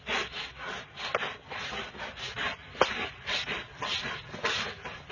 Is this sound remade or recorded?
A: recorded